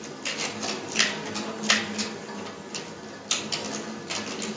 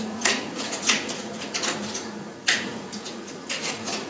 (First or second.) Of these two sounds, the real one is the first